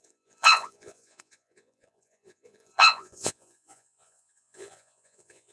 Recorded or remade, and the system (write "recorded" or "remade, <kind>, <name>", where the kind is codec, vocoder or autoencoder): remade, vocoder, Vocos